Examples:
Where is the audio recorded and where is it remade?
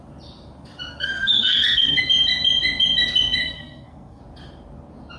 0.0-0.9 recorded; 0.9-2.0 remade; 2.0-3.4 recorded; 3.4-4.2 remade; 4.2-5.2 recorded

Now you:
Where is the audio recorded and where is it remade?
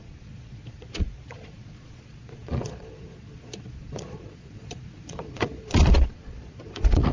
0.0-7.1 remade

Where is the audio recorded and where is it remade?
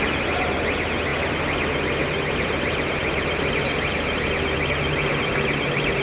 0.0-6.0 recorded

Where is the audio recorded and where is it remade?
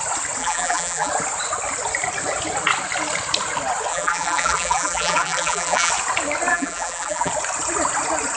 0.0-0.4 recorded; 0.4-1.1 remade; 1.1-3.9 recorded; 3.9-5.9 remade; 5.9-6.5 recorded; 6.5-7.3 remade; 7.3-8.4 recorded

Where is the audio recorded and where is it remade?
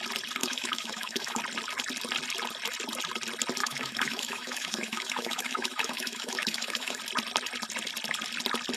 0.0-0.4 recorded; 0.4-1.4 remade; 1.4-3.6 recorded; 3.6-7.0 remade; 7.0-8.8 recorded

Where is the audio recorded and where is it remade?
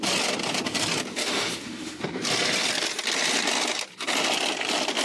0.0-1.2 recorded; 1.2-2.0 remade; 2.0-5.0 recorded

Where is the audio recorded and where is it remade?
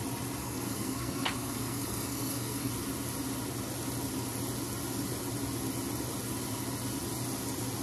0.0-0.4 recorded; 0.4-2.7 remade; 2.7-7.8 recorded